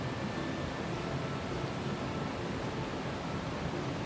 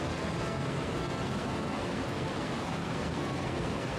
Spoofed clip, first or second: second